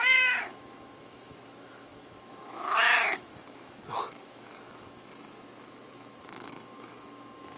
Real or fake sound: fake